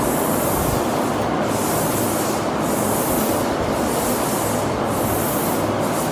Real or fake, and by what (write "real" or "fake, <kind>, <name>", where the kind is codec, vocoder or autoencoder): real